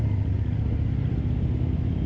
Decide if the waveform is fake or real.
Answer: real